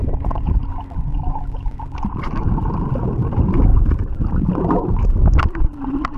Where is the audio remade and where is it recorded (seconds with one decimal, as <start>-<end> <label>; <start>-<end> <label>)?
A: 0.0-2.5 remade; 2.5-3.7 recorded; 3.7-4.6 remade; 4.6-6.2 recorded